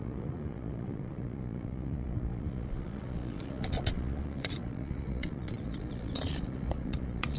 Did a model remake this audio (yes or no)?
yes